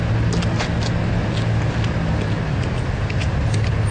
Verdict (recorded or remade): recorded